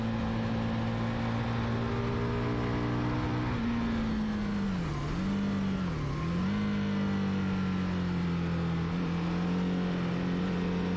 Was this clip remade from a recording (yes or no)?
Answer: no